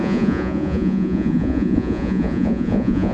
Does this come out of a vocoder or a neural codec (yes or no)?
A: yes